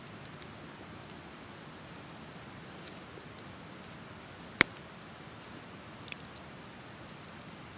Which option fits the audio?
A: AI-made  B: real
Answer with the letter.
B